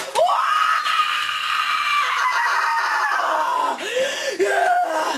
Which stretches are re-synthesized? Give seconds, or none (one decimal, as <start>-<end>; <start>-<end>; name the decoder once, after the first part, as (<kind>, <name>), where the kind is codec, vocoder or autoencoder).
1.0-1.6 (codec, SNAC)